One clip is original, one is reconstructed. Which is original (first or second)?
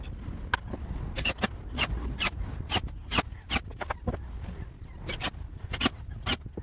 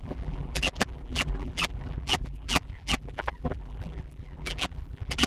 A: first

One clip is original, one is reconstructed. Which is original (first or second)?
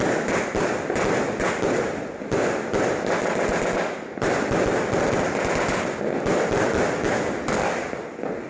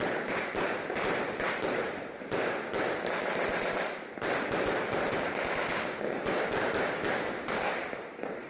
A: first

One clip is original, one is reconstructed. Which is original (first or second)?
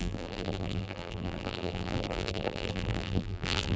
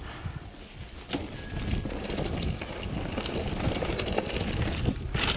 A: second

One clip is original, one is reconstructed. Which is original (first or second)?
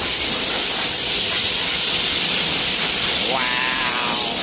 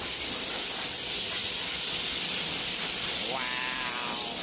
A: second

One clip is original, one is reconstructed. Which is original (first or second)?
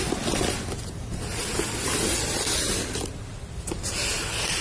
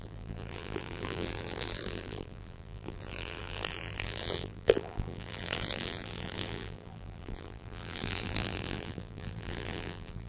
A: first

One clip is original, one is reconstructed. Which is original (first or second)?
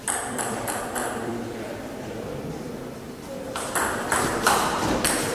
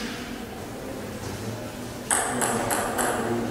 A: second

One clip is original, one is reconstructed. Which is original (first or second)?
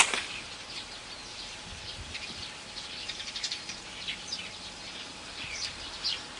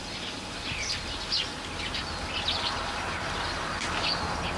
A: second